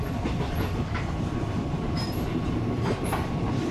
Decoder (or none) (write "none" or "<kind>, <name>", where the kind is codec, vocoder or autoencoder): vocoder, BigVGAN v2